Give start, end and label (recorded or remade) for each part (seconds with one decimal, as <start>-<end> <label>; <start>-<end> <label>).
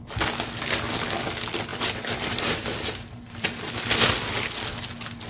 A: 0.0-1.7 recorded; 1.7-3.7 remade; 3.7-5.3 recorded